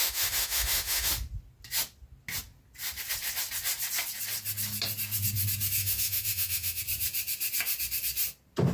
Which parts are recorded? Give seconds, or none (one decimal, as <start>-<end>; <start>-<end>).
1.1-5.8; 6.8-8.7